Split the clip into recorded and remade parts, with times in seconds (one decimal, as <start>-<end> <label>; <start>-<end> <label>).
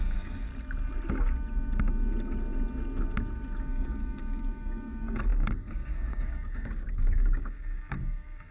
0.0-0.5 remade; 0.5-3.6 recorded; 3.6-8.5 remade